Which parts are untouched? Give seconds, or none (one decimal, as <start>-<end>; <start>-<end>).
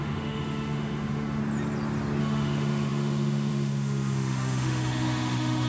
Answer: 1.4-2.2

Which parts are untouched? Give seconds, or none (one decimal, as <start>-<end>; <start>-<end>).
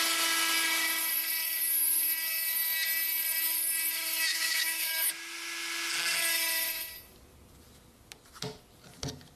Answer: 0.0-4.3; 5.1-9.4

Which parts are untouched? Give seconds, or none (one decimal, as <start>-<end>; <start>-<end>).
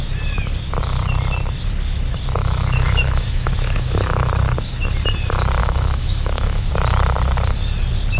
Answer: 0.0-2.4; 4.3-5.6; 6.7-8.2